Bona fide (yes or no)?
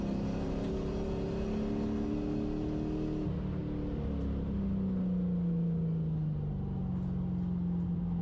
yes